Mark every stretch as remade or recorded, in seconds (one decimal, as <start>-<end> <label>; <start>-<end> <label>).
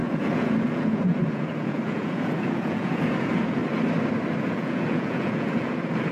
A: 0.0-3.6 remade; 3.6-4.4 recorded; 4.4-6.1 remade